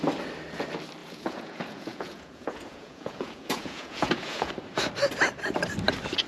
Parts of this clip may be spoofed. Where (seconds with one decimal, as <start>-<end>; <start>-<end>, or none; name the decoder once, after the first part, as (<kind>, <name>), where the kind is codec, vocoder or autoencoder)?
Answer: 1.0-4.5 (vocoder, Vocos)

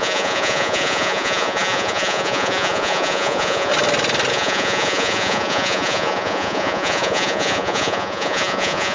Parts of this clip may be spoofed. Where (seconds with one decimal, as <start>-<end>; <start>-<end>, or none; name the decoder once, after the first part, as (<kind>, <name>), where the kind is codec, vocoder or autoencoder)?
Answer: 0.0-3.7 (vocoder, Vocos); 4.3-8.9

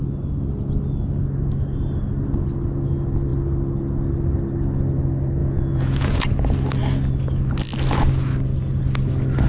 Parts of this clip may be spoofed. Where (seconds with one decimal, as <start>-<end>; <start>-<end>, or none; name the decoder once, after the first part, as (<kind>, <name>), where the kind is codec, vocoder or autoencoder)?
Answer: 5.4-6.2 (vocoder, Vocos)

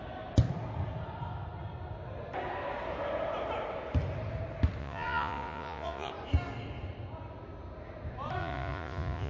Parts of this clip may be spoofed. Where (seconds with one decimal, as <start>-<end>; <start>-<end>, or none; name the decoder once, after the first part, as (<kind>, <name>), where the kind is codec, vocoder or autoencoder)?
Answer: 4.8-6.1 (vocoder, Vocos); 8.4-9.3

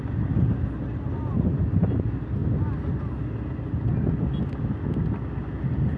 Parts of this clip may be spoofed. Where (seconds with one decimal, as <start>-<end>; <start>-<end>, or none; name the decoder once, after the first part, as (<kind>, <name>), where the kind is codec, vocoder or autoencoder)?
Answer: none

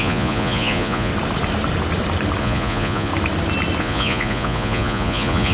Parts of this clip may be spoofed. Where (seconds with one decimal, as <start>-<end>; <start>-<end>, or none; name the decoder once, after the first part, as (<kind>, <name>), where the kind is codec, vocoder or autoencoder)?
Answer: 0.0-1.1 (vocoder, Vocos); 2.4-3.1; 3.8-5.5

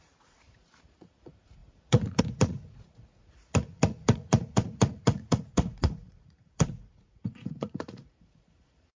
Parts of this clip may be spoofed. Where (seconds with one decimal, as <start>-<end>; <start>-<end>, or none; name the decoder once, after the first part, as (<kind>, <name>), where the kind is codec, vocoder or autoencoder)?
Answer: 0.0-9.0 (vocoder, Vocos)